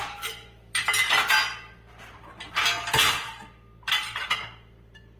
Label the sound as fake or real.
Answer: real